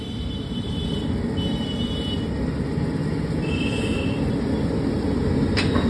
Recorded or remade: recorded